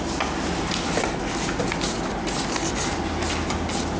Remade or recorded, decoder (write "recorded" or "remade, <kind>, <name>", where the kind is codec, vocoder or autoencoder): recorded